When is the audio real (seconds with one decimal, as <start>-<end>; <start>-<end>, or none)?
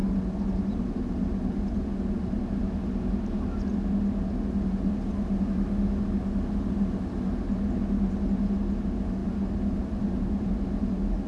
0.0-11.3